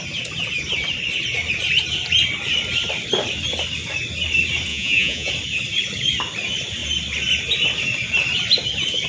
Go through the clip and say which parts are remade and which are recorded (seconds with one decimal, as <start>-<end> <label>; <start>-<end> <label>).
0.0-4.7 recorded; 4.7-5.3 remade; 5.3-9.1 recorded

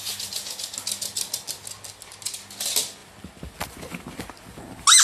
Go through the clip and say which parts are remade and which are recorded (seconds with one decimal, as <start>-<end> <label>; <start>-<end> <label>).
0.0-5.0 recorded

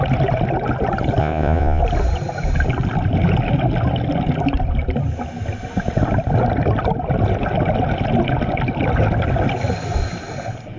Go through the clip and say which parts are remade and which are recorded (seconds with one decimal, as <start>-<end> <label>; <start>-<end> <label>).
0.0-1.2 recorded; 1.2-1.8 remade; 1.8-10.8 recorded

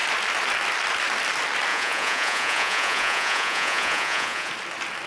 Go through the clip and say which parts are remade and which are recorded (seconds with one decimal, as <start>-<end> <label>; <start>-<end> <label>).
0.0-1.7 recorded; 1.7-4.5 remade; 4.5-5.1 recorded

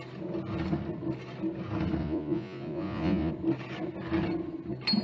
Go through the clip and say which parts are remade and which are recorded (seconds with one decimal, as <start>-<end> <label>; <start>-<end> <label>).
0.0-2.0 recorded; 2.0-3.3 remade; 3.3-5.0 recorded

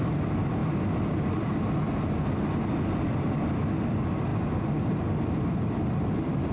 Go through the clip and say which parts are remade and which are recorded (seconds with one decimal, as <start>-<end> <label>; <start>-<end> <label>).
0.0-6.5 recorded

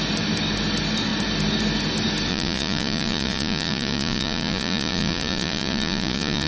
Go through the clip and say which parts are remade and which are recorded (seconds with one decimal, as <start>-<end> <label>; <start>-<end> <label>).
0.0-2.3 recorded; 2.3-6.5 remade